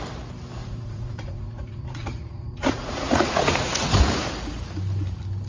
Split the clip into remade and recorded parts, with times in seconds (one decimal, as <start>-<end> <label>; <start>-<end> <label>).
0.0-0.6 recorded; 0.6-3.9 remade; 3.9-5.5 recorded